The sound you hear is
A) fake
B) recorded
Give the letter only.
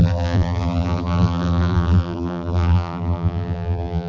A